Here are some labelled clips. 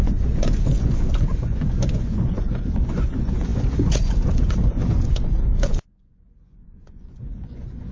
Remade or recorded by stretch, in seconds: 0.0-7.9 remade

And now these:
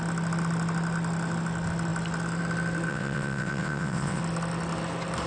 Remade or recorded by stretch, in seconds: 0.0-2.9 recorded; 2.9-4.2 remade; 4.2-5.3 recorded

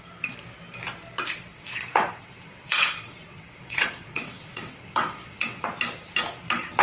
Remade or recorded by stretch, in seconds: 0.0-1.5 recorded; 1.5-5.6 remade; 5.6-6.8 recorded

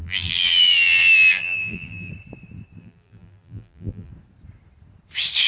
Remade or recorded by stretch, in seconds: 0.0-2.1 remade; 2.1-2.8 recorded; 2.8-4.1 remade; 4.1-5.5 recorded

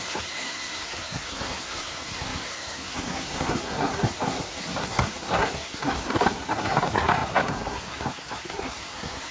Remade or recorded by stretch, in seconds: 0.0-9.3 remade

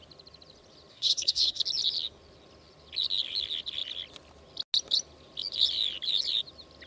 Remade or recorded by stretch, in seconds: 0.0-0.9 recorded; 0.9-1.6 remade; 1.6-6.9 recorded

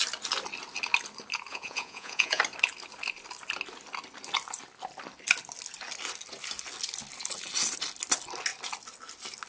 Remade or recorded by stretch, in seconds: 0.0-1.5 recorded; 1.5-2.4 remade; 2.4-9.5 recorded

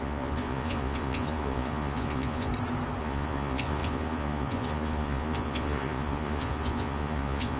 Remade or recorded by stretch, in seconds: 0.0-2.5 remade; 2.5-3.0 recorded; 3.0-7.6 remade